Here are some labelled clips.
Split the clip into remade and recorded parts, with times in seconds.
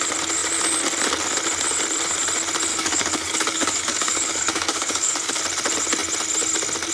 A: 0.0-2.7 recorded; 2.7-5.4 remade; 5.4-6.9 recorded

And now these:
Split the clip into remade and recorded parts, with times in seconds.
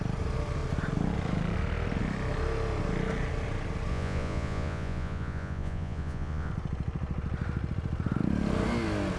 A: 0.0-3.9 recorded; 3.9-6.5 remade; 6.5-9.2 recorded